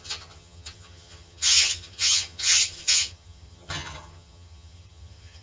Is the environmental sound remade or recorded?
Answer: remade